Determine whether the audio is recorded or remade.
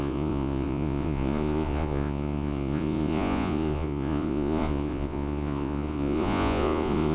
remade